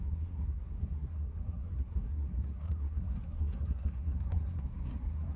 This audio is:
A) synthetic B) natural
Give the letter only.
A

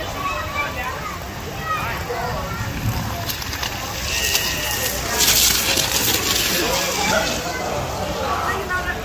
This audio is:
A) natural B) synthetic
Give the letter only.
A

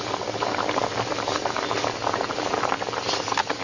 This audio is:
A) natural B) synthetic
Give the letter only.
A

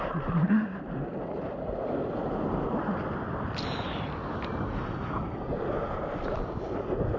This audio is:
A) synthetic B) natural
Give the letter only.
B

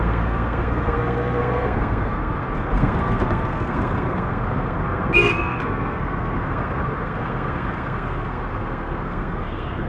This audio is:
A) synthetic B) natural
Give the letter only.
A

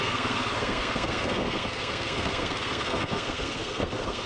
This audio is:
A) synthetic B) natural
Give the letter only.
A